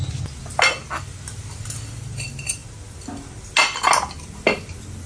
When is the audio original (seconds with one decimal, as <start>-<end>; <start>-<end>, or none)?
0.0-5.1